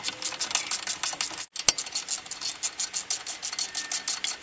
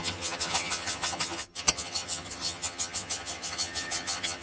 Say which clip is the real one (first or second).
first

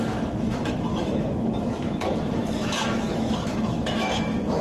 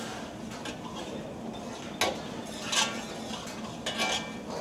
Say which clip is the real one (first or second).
second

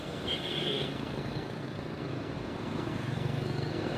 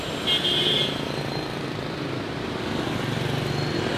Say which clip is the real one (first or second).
second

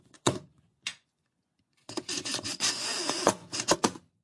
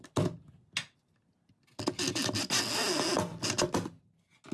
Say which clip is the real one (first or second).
second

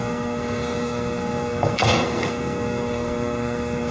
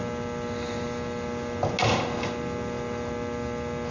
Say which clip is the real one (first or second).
second